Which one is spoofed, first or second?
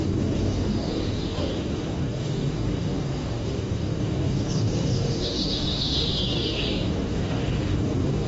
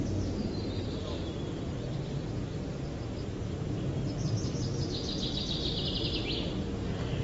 first